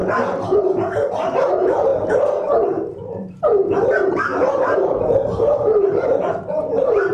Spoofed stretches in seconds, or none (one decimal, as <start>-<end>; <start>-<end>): 1.5-7.1